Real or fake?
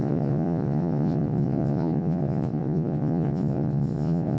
fake